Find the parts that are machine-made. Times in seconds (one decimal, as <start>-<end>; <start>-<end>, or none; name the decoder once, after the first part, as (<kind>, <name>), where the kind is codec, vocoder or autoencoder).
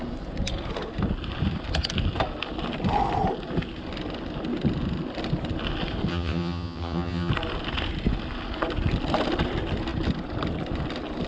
6.1-7.3 (vocoder, HiFi-GAN)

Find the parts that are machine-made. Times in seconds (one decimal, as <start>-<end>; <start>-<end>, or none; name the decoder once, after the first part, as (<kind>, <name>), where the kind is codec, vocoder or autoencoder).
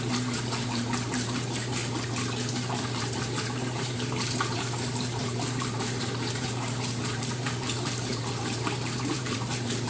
0.0-1.8 (vocoder, BigVGAN v2); 2.5-9.9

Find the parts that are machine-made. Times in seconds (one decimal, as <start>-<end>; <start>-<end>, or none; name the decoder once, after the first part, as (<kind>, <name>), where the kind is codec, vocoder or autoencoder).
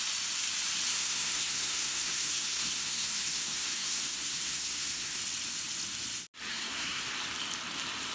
0.9-5.2 (codec, SNAC); 6.5-7.1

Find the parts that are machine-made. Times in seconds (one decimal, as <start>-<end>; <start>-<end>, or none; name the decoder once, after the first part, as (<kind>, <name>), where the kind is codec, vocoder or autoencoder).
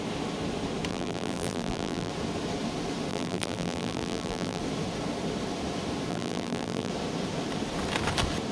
0.9-2.1 (vocoder, BigVGAN v2); 3.1-4.6; 6.1-6.9